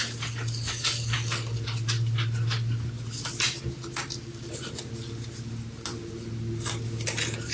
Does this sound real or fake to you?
real